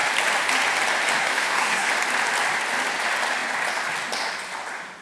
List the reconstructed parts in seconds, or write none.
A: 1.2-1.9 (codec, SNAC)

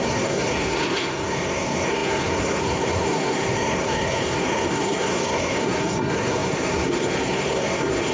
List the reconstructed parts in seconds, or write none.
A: 0.0-8.1 (codec, SNAC)

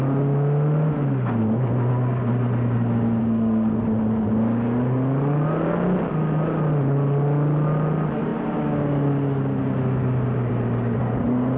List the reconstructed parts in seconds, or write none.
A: 3.2-3.8 (codec, SNAC)

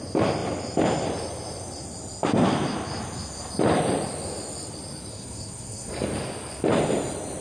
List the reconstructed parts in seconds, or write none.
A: 5.1-5.9 (codec, SNAC)

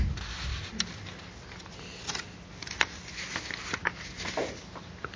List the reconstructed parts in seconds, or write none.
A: none

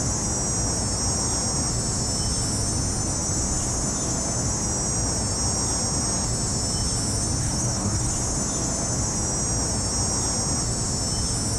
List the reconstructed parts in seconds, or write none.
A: 7.4-8.1 (codec, SNAC)